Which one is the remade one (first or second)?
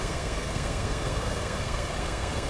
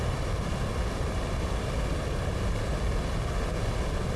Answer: first